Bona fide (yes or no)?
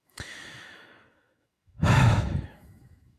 no